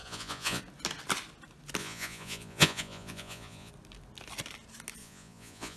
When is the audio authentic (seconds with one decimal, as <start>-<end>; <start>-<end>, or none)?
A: 0.6-1.8; 3.7-5.0